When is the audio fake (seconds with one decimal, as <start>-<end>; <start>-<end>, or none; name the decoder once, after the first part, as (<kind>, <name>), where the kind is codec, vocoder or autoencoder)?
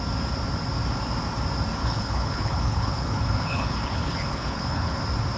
1.8-5.0 (codec, HILCodec)